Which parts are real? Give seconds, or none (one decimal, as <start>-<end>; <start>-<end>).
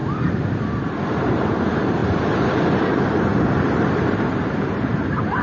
0.0-1.0